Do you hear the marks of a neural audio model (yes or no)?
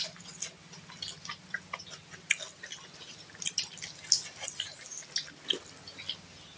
no